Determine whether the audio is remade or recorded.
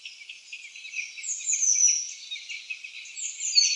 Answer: recorded